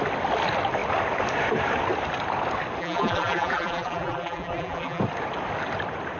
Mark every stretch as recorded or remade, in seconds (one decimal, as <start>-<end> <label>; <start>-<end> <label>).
0.0-2.8 recorded; 2.8-5.0 remade; 5.0-6.2 recorded